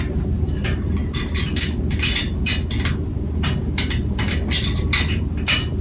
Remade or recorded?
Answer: recorded